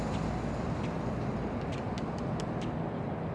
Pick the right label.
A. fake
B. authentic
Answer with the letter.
B